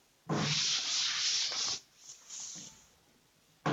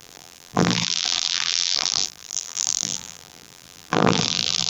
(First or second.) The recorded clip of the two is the first